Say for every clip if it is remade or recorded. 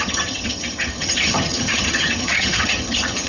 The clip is remade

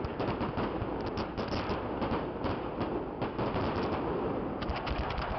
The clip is recorded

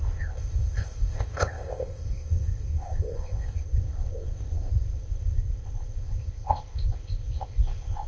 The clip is remade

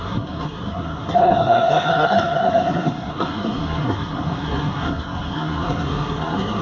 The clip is remade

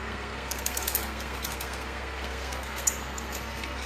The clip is remade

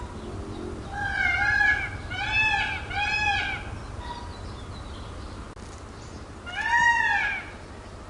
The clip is recorded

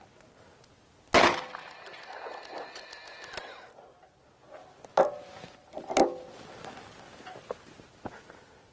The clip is recorded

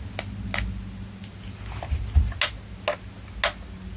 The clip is recorded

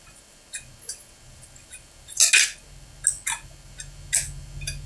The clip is recorded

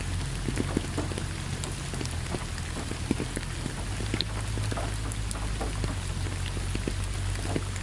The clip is recorded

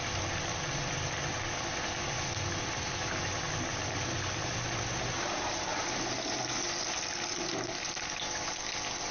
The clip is recorded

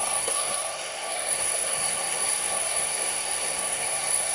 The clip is remade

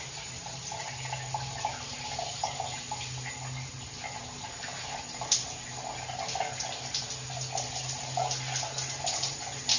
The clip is recorded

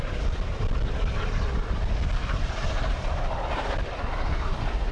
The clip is recorded